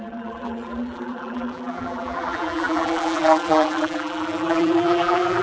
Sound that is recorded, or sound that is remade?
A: remade